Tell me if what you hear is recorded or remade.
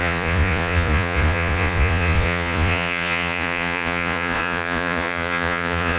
remade